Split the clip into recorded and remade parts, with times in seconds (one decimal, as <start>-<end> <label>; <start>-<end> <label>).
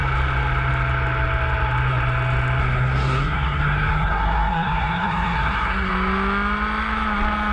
0.0-2.6 recorded; 2.6-5.9 remade; 5.9-7.5 recorded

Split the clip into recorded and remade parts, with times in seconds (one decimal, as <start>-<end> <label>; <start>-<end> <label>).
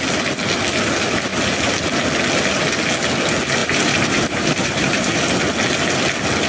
0.0-3.6 recorded; 3.6-5.2 remade; 5.2-6.5 recorded